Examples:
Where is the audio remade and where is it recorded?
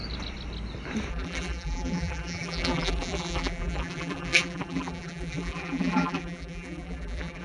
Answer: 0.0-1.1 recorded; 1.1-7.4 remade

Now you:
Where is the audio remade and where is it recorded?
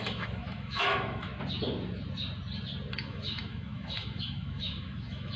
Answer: 0.0-1.3 remade; 1.3-2.9 recorded; 2.9-5.4 remade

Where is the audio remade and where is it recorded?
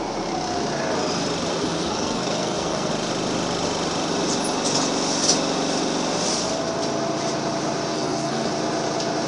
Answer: 0.0-1.5 recorded; 1.5-2.9 remade; 2.9-7.9 recorded; 7.9-8.5 remade; 8.5-9.3 recorded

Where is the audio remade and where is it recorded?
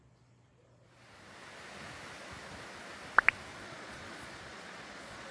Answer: 0.0-3.5 recorded; 3.5-5.3 remade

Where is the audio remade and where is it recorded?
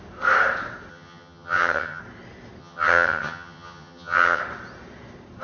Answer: 0.0-0.9 recorded; 0.9-2.0 remade; 2.0-2.6 recorded; 2.6-4.4 remade; 4.4-5.4 recorded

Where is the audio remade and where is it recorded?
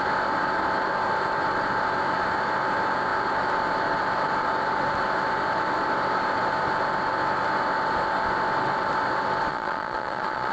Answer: 0.0-9.5 recorded; 9.5-10.5 remade